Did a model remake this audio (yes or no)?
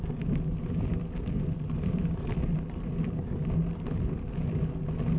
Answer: no